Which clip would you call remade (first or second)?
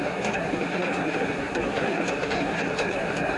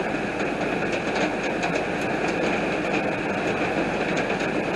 first